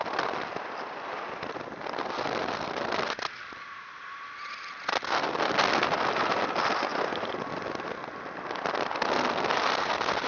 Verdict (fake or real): real